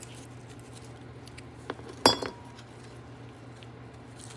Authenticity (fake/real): real